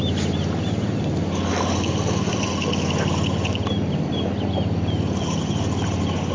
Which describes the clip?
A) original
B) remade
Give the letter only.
A